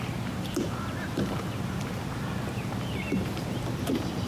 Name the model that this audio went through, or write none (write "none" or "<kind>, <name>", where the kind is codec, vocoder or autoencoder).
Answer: vocoder, BigVGAN v2